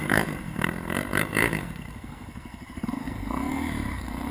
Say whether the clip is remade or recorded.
remade